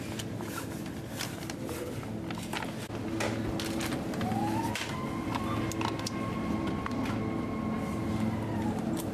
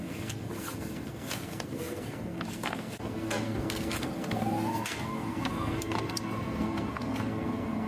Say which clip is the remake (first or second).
second